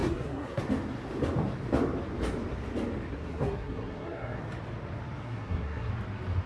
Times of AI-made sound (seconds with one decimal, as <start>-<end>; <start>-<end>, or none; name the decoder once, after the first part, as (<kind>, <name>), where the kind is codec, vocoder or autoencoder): 0.0-0.6 (codec, SNAC); 3.1-4.4; 5.2-5.9